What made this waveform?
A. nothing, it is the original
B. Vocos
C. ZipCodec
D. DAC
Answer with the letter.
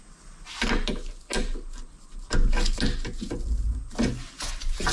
A